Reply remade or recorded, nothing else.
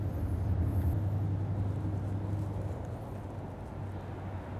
recorded